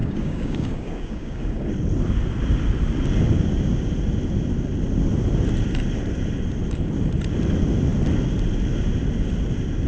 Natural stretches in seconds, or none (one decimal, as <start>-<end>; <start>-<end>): 1.7-9.9